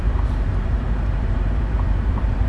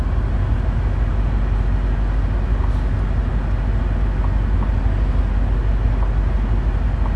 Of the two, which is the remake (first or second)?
first